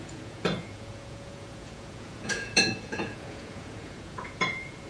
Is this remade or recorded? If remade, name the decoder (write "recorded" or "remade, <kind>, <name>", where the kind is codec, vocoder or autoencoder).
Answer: remade, vocoder, Vocos